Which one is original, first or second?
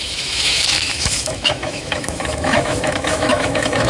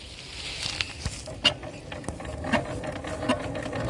second